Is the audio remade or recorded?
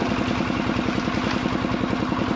recorded